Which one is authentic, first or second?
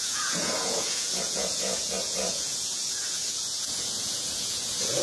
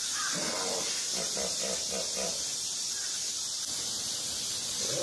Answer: second